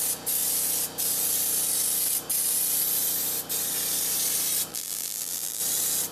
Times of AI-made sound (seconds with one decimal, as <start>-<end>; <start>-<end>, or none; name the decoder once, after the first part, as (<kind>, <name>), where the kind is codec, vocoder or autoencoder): 4.7-5.6 (vocoder, BigVGAN v2)